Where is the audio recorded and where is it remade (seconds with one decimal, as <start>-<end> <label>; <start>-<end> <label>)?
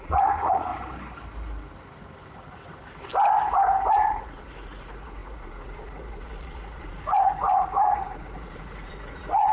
0.0-0.7 remade; 0.7-3.9 recorded; 3.9-9.5 remade